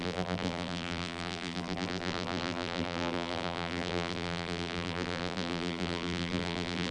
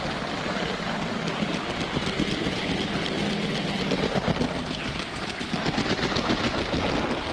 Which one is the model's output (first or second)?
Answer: first